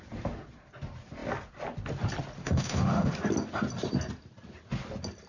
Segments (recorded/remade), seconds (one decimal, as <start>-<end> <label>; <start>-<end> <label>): 0.0-2.4 recorded; 2.4-3.1 remade; 3.1-5.3 recorded